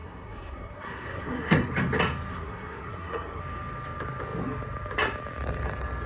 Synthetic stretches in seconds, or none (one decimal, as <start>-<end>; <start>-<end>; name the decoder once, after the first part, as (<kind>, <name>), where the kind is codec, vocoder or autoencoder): 0.0-1.7 (codec, SNAC); 2.3-3.4